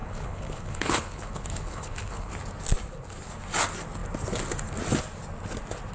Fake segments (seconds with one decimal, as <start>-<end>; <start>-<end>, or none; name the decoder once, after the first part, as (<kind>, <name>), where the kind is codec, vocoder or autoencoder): 0.0-2.3 (codec, HILCodec)